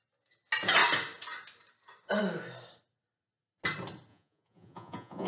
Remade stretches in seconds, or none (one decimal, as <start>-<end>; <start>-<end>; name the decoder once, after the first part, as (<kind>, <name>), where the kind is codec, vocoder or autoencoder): 4.1-5.3 (vocoder, Vocos)

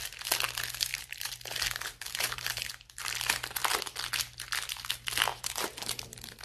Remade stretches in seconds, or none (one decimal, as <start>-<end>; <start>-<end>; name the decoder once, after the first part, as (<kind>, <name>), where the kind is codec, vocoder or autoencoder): 0.9-2.7 (vocoder, BigVGAN v2); 5.3-6.4

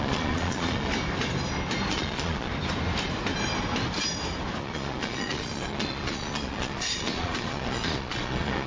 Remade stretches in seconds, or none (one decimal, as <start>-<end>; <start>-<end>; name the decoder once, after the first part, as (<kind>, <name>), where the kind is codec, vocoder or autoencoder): 0.0-0.9 (vocoder, Vocos); 1.9-2.5; 4.6-8.7

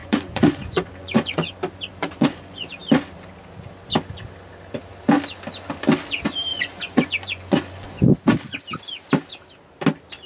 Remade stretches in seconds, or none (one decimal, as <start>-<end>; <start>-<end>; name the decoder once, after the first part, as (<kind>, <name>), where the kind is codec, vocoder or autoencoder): 0.0-1.5 (vocoder, Vocos); 1.9-2.7; 6.5-8.0

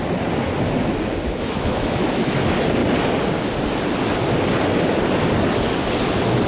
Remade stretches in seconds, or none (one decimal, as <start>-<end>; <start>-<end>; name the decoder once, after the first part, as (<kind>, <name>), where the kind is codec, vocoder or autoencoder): 1.1-2.4 (autoencoder, DAC-VAE)

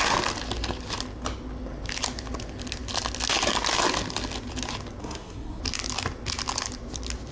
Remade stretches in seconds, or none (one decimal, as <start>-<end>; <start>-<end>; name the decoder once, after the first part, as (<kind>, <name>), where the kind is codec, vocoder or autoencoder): 5.0-5.6 (codec, SNAC)

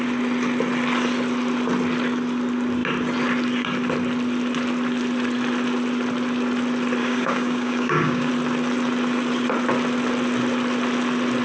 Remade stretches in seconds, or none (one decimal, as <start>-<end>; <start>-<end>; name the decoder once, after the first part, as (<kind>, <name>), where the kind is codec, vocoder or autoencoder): 7.0-8.3 (codec, DAC)